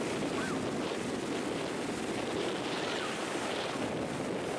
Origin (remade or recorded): recorded